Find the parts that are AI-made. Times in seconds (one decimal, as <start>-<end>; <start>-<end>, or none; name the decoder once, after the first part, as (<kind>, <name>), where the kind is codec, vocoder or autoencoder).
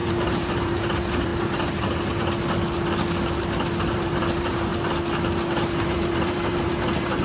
0.0-1.3 (vocoder, BigVGAN v2); 3.8-4.7; 5.6-7.2